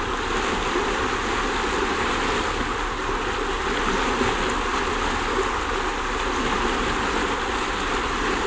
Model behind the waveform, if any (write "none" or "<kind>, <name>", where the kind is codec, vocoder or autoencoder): none